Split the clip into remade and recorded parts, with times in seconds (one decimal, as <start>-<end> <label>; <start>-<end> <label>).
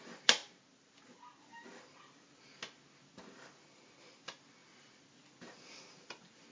0.0-6.5 recorded